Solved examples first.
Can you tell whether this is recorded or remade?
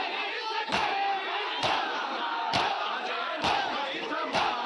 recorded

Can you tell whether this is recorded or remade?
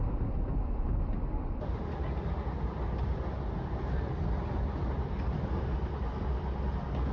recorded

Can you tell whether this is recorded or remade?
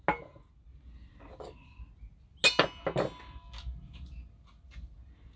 recorded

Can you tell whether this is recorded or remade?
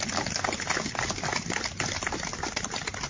recorded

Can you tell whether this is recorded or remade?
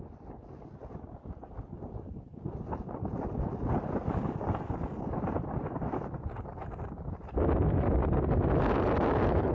recorded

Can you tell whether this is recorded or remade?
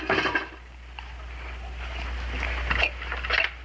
recorded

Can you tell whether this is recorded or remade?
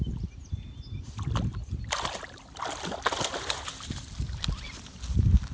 recorded